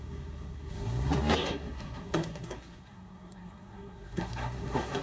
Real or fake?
fake